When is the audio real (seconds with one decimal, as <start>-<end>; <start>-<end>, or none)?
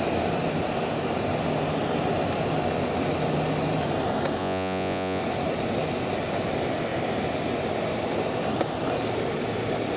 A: 0.0-4.4; 5.2-10.0